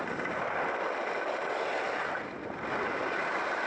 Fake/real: real